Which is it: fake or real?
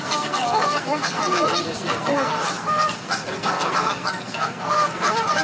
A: fake